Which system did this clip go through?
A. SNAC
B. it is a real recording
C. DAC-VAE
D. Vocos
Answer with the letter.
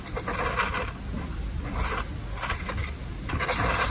B